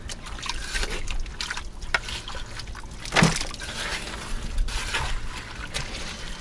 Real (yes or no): yes